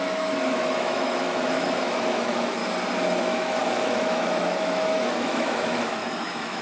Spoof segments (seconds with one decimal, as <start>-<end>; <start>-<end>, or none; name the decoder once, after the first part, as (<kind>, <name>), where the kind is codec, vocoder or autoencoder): 0.0-2.6 (autoencoder, DAC-VAE); 3.2-6.6